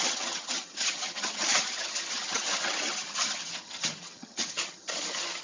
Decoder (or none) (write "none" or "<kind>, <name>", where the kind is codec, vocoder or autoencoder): vocoder, HiFi-GAN